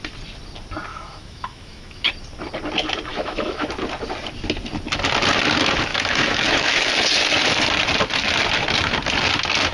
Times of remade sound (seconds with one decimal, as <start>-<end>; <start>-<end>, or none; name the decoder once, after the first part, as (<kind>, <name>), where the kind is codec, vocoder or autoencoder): 0.9-2.1 (autoencoder, DAC-VAE); 3.1-3.7; 5.9-6.9